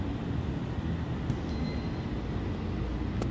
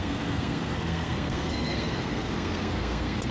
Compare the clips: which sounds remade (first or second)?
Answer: second